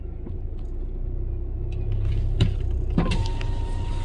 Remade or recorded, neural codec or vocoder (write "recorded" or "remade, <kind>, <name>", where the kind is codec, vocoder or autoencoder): recorded